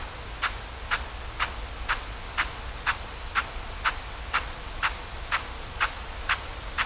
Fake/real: real